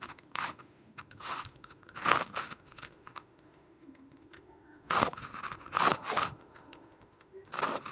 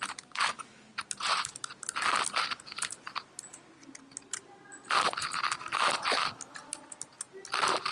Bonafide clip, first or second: second